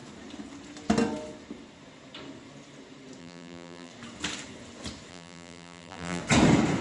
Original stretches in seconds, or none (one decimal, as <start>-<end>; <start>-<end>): 0.0-3.2; 3.9-5.1; 6.2-6.8